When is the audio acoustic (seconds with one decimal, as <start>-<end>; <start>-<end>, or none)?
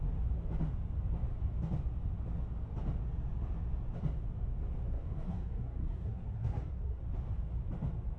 0.0-4.9; 7.0-8.2